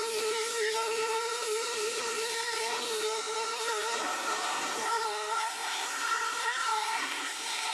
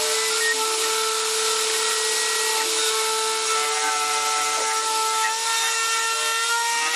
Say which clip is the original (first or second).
second